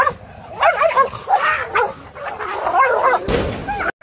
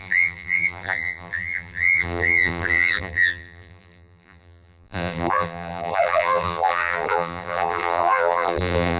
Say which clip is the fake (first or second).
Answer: second